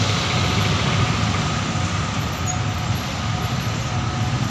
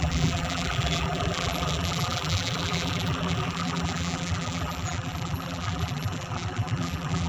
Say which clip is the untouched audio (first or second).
first